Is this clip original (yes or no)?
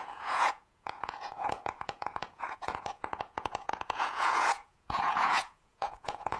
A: no